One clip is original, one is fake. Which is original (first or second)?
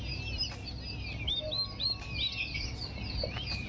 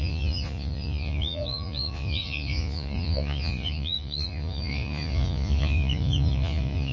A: first